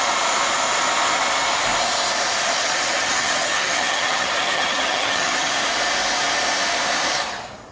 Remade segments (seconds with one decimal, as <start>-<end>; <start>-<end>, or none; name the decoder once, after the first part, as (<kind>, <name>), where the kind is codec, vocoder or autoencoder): 2.6-5.5 (vocoder, HiFi-GAN)